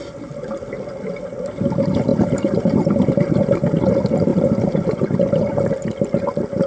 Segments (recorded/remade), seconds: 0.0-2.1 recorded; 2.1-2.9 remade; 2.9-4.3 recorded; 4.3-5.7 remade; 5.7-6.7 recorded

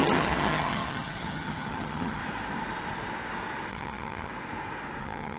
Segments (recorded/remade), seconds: 0.0-2.2 remade; 2.2-3.7 recorded; 3.7-4.3 remade; 4.3-5.0 recorded; 5.0-5.4 remade

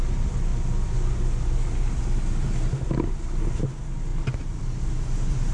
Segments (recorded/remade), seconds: 0.0-4.1 recorded; 4.1-4.6 remade; 4.6-5.5 recorded

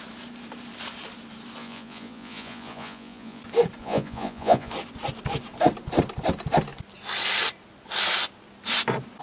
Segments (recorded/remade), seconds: 0.0-1.6 recorded; 1.6-3.4 remade; 3.4-3.8 recorded; 3.8-4.7 remade; 4.7-9.2 recorded

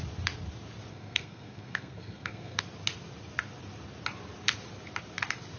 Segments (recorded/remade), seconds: 0.0-0.9 recorded; 0.9-2.6 remade; 2.6-5.6 recorded